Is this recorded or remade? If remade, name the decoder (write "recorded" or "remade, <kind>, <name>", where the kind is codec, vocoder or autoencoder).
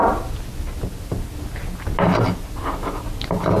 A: recorded